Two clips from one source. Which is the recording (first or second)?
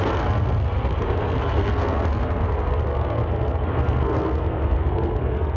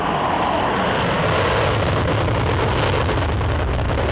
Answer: second